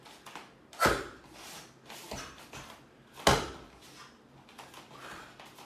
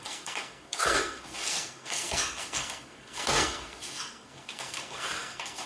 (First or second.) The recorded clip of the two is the first